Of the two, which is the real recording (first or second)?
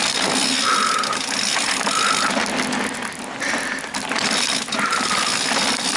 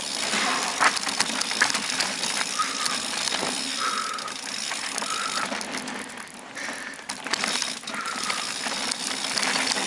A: first